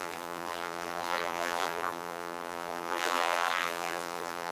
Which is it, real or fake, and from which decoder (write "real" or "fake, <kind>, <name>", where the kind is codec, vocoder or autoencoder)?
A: fake, vocoder, BigVGAN v2